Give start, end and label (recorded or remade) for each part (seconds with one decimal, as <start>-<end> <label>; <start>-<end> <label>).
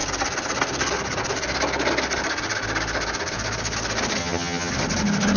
0.0-4.2 recorded; 4.2-4.7 remade; 4.7-5.4 recorded